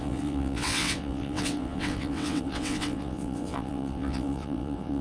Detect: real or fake fake